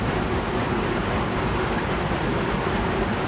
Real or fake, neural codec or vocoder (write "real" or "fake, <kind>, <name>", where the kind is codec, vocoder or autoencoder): real